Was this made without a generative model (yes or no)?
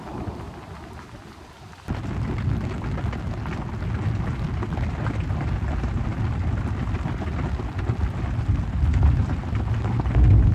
yes